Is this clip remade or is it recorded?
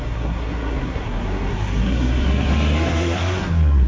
remade